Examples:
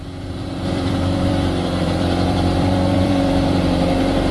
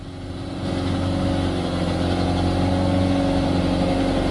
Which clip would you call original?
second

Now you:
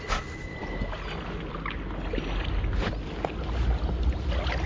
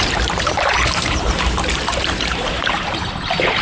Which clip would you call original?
first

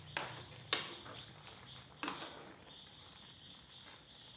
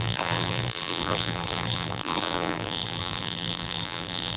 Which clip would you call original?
first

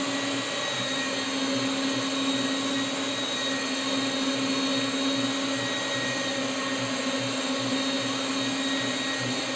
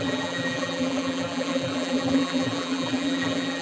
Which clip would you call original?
first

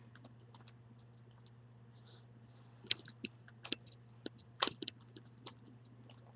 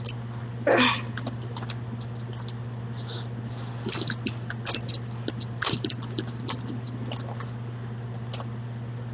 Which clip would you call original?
second